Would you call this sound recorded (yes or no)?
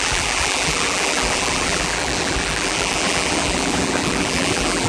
no